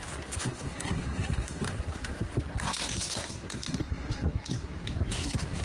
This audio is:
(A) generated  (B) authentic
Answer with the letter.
A